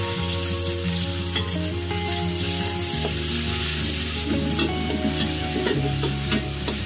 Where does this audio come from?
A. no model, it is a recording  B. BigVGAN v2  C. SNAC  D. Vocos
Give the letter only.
A